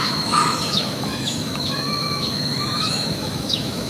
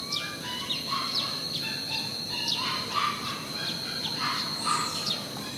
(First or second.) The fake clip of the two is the first